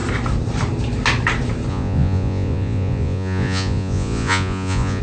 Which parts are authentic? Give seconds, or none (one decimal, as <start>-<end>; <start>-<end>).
0.0-1.7